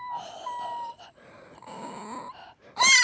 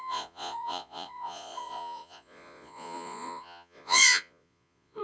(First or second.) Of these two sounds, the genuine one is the first